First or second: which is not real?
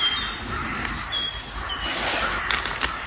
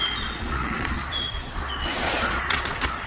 second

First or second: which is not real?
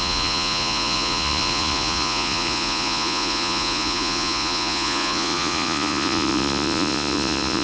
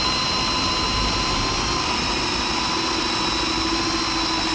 first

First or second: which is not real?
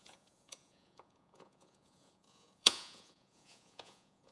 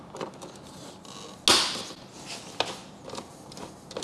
first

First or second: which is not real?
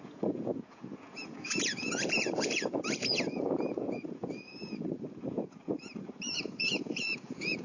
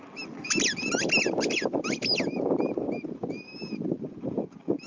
first